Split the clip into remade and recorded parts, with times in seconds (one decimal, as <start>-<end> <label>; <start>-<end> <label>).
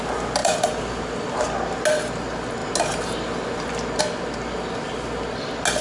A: 0.0-0.4 recorded; 0.4-1.4 remade; 1.4-5.8 recorded